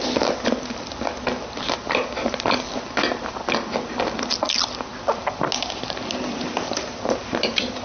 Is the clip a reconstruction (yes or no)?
no